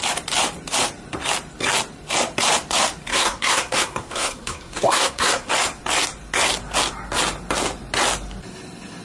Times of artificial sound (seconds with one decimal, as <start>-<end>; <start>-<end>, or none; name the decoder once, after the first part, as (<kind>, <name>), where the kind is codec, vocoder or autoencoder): 3.1-5.5 (codec, SNAC)